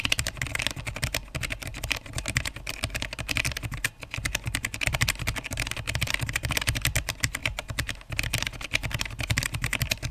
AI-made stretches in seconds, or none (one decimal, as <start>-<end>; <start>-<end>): none